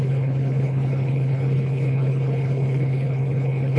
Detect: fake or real fake